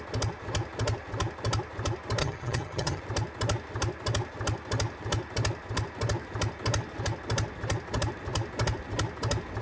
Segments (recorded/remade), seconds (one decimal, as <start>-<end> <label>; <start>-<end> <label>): 0.0-2.2 recorded; 2.2-3.0 remade; 3.0-9.6 recorded